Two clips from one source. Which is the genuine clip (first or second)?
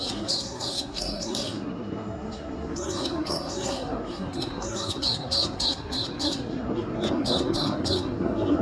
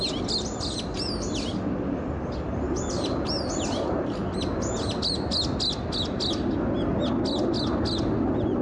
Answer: second